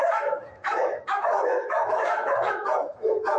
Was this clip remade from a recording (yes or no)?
yes